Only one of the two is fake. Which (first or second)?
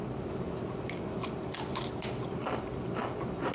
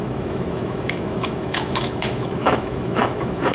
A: second